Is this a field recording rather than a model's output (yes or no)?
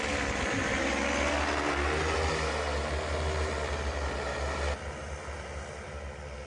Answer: yes